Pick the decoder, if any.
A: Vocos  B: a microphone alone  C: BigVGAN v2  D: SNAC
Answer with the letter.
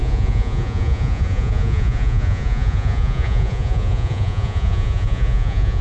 A